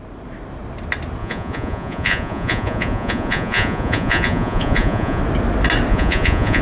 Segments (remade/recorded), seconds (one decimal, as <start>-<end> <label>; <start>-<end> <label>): 0.0-1.2 recorded; 1.2-5.2 remade; 5.2-5.9 recorded; 5.9-6.6 remade